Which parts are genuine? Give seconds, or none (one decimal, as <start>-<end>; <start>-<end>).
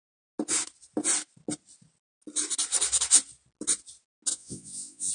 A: 0.0-4.3